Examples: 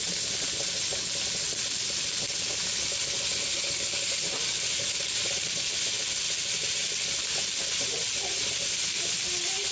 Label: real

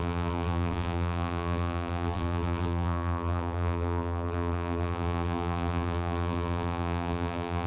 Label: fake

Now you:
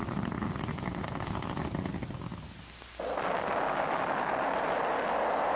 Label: real